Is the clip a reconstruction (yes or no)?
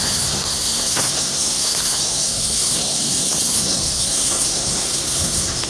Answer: yes